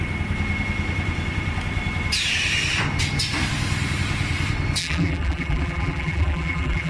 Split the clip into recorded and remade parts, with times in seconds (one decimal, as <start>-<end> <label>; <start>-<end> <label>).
0.0-4.8 recorded; 4.8-6.9 remade